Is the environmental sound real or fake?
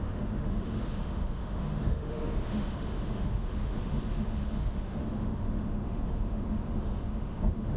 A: fake